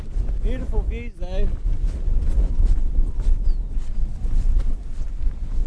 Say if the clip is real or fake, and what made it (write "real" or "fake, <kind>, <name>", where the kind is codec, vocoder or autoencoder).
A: real